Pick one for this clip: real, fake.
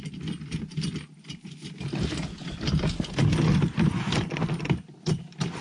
real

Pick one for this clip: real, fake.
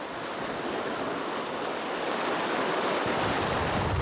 real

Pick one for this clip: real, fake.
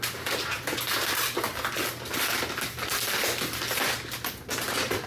real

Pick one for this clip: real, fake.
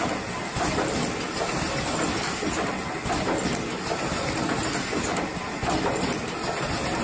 real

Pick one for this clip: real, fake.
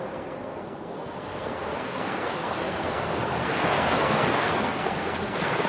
fake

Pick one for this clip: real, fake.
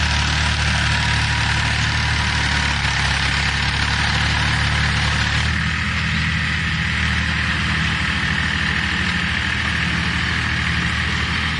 real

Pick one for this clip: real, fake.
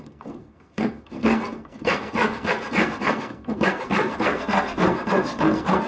fake